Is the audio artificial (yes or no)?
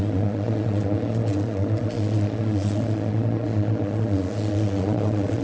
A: yes